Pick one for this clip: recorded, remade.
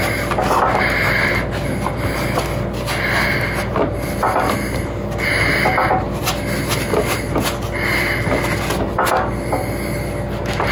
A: recorded